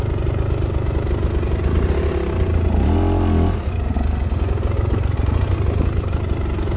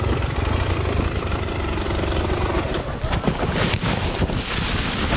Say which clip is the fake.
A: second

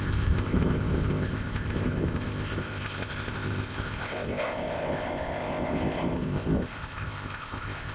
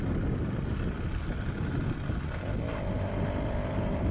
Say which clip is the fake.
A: first